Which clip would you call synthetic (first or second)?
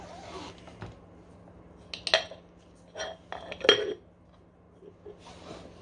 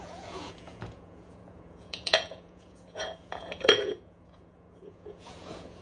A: second